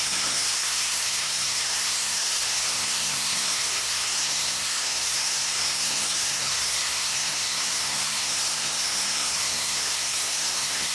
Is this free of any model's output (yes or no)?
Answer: no